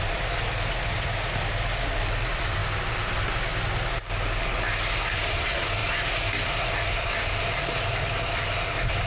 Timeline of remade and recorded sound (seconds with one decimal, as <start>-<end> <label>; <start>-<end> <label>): 0.0-2.6 remade; 2.6-5.1 recorded; 5.1-9.1 remade